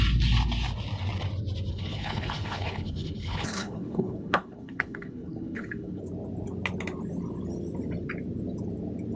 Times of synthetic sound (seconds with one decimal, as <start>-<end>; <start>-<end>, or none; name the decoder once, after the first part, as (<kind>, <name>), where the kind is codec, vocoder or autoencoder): 1.7-6.0 (codec, HILCodec)